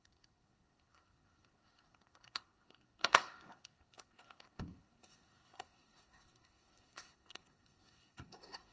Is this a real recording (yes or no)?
no